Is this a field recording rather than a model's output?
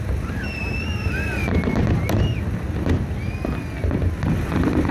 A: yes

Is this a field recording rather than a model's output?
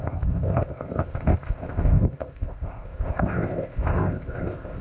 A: no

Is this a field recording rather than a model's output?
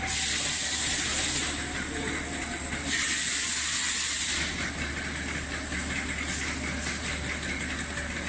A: yes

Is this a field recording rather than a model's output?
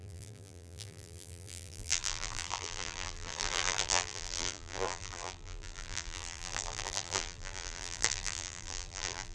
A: no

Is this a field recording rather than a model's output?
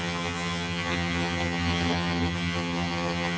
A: no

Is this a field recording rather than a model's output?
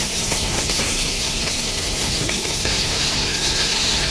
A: no